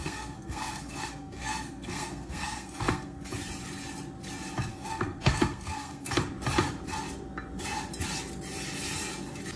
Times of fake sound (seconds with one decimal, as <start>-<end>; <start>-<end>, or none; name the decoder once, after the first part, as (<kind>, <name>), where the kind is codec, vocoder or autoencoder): 0.0-3.2 (codec, SNAC); 4.7-6.2